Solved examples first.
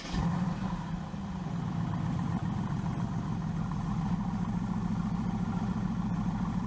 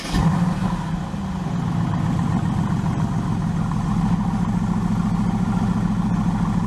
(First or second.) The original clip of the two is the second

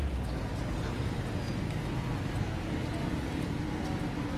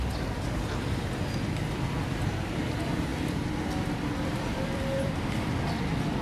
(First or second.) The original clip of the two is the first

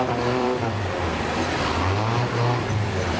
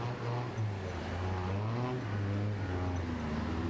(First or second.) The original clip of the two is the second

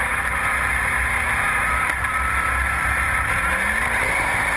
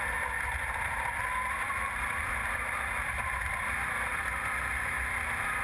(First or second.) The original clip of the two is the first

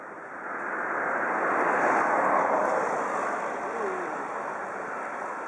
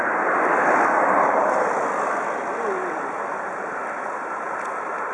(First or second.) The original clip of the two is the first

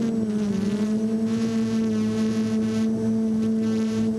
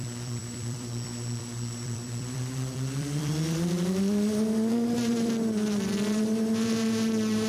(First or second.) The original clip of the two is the first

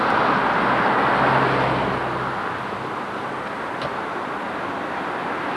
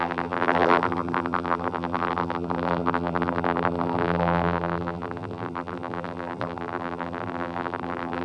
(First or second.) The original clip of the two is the first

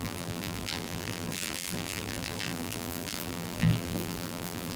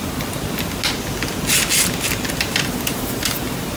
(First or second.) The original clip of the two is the second